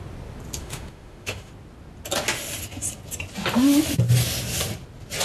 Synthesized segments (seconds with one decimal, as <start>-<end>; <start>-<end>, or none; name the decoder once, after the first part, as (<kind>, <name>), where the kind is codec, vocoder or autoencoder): 0.6-1.5 (autoencoder, DAC-VAE)